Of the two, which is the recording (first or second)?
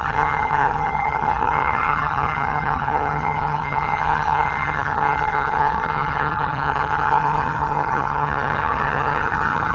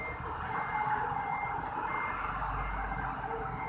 second